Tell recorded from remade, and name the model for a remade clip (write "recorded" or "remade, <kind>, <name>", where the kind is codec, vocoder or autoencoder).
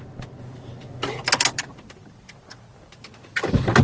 recorded